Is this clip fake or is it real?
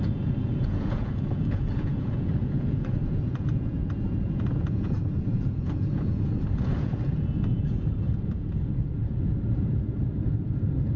fake